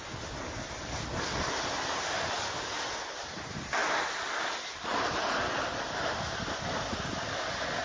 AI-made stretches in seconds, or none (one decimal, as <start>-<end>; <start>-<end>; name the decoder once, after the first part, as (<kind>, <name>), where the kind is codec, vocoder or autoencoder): 3.8-6.5 (vocoder, BigVGAN v2)